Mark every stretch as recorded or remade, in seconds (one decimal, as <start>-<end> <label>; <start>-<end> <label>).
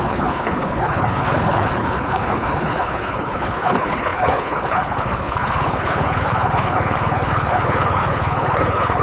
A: 0.0-9.0 remade